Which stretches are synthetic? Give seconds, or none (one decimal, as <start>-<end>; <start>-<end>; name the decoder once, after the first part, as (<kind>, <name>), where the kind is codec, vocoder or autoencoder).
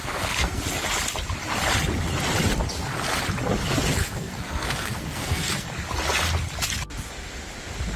0.0-0.6 (codec, SNAC); 4.0-5.7